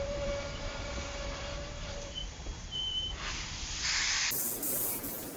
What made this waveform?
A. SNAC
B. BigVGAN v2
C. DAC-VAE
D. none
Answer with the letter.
B